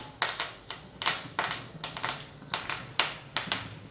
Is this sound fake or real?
real